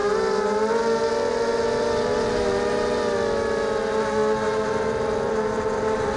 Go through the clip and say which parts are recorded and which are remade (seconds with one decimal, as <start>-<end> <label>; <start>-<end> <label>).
0.0-6.2 recorded